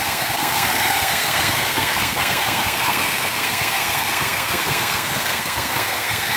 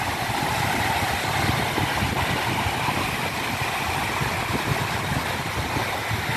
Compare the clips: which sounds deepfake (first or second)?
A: first